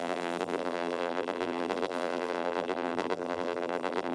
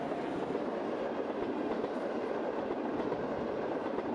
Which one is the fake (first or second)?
first